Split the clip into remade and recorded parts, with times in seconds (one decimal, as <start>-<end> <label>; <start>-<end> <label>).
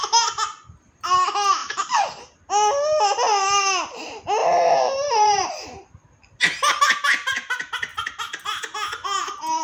0.0-1.6 recorded; 1.6-2.5 remade; 2.5-4.4 recorded; 4.4-5.5 remade; 5.5-9.6 recorded